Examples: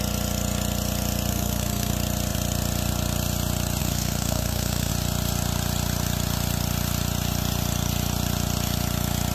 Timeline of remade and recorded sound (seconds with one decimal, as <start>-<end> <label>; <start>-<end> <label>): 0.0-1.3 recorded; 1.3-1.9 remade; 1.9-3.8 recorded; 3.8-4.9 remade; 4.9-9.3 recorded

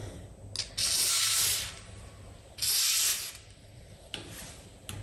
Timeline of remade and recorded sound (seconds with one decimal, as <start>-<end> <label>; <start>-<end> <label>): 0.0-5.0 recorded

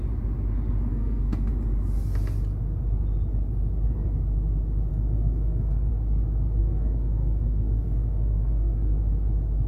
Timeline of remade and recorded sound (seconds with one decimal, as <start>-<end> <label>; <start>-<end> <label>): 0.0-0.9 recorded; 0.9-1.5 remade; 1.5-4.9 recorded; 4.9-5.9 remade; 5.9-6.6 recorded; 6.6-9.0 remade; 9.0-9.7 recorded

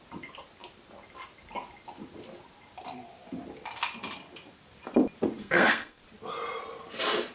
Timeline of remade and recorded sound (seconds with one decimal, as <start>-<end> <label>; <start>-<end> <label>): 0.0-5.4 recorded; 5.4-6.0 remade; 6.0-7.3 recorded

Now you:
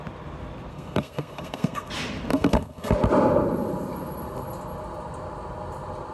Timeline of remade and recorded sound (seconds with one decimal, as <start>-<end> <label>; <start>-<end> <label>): 0.0-0.7 recorded; 0.7-1.9 remade; 1.9-2.3 recorded; 2.3-2.9 remade; 2.9-6.1 recorded

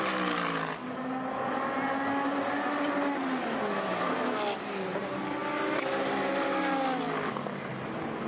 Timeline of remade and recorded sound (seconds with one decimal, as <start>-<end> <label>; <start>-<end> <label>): 0.0-8.3 recorded

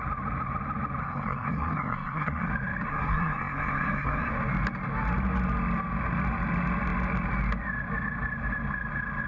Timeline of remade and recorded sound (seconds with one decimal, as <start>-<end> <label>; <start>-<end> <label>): 0.0-1.0 recorded; 1.0-2.5 remade; 2.5-2.9 recorded; 2.9-4.3 remade; 4.3-9.3 recorded